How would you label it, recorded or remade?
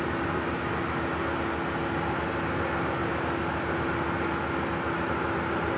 recorded